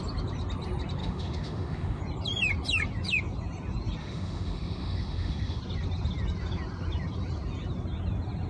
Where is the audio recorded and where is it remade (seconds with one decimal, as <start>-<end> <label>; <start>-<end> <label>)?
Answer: 0.0-1.0 recorded; 1.0-2.0 remade; 2.0-4.0 recorded; 4.0-5.6 remade; 5.6-8.5 recorded